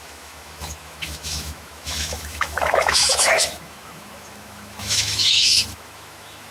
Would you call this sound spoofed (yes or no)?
yes